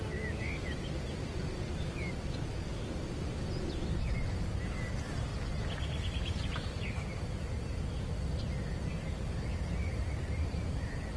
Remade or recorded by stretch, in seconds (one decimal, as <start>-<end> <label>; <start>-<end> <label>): 0.0-11.2 recorded